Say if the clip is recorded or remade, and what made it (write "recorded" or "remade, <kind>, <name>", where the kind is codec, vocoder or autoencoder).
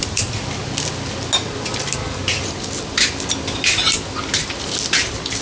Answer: recorded